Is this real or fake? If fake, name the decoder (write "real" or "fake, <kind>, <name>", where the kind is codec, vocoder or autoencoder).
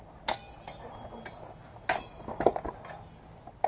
real